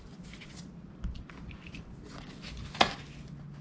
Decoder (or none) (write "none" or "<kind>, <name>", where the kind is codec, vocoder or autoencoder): none